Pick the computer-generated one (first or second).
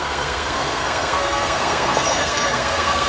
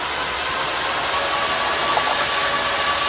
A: first